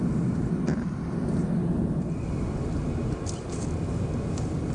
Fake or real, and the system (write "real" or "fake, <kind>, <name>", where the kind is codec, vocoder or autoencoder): real